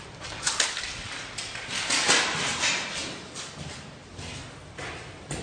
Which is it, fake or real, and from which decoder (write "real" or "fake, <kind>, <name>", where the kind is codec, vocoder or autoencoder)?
real